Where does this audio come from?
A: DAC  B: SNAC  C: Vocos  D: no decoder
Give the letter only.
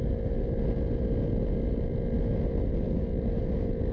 D